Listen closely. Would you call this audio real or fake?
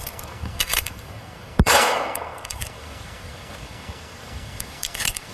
fake